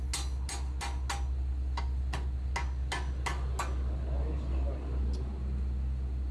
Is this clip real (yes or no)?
yes